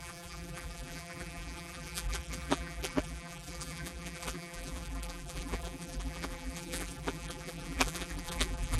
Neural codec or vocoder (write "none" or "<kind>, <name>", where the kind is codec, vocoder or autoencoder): vocoder, BigVGAN v2